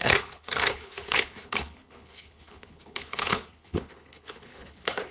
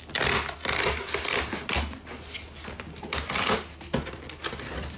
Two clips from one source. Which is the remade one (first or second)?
first